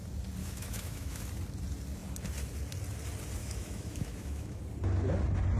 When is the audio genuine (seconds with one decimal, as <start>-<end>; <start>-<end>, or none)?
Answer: 0.0-0.4; 1.3-3.4; 4.6-5.6